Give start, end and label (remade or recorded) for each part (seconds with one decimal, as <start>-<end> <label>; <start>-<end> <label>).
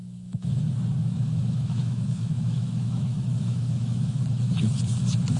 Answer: 0.0-0.6 remade; 0.6-1.0 recorded; 1.0-4.2 remade; 4.2-5.4 recorded